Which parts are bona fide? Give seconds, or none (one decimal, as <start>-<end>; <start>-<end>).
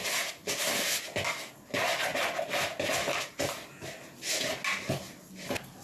0.0-5.8